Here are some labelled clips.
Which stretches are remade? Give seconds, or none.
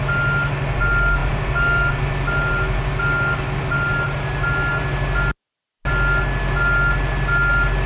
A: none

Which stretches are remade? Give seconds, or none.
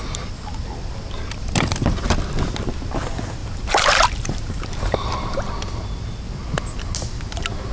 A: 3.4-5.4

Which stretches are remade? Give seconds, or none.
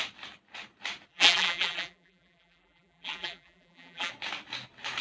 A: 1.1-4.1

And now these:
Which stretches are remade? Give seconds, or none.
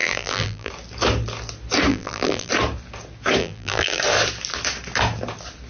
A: 0.0-0.7; 1.9-2.5; 3.4-4.0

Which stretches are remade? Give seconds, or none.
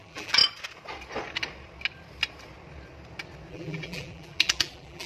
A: 0.0-0.4; 3.5-5.1